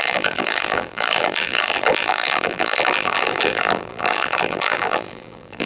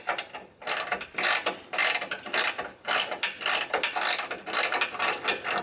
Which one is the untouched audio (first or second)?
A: second